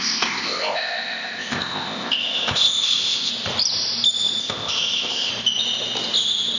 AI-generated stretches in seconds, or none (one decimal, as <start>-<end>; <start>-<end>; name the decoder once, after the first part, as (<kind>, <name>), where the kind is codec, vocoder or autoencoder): 0.0-3.3 (codec, ZipCodec); 4.4-5.3